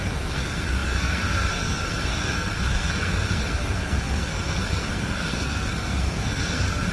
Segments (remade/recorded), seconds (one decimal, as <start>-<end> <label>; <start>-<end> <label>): 0.0-6.9 remade